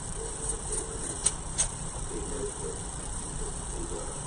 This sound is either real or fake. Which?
fake